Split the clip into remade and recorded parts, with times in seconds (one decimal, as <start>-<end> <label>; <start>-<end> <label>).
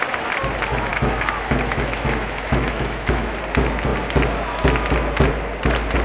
0.0-0.9 recorded; 0.9-3.4 remade; 3.4-6.0 recorded